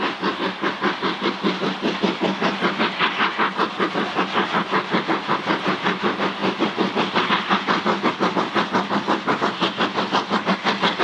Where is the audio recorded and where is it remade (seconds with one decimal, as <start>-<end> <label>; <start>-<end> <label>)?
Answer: 0.0-11.0 recorded